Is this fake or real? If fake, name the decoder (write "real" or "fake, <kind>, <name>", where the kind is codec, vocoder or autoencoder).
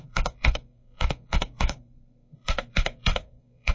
fake, codec, SNAC